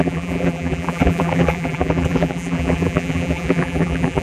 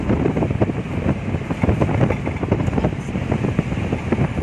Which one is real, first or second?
second